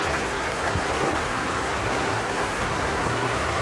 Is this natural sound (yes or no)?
no